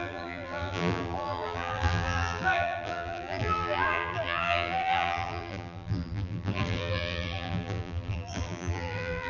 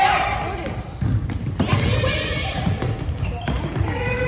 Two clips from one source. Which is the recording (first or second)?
second